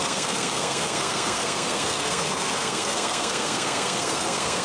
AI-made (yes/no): yes